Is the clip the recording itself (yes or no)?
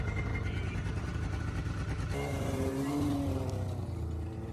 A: no